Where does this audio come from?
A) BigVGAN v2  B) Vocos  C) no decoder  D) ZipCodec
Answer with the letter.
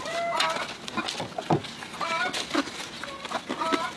C